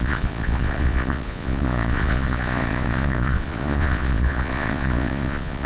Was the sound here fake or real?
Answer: fake